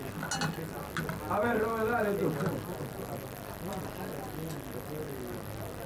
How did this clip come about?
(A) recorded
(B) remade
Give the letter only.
A